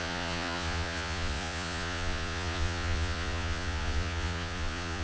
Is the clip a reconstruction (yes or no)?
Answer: yes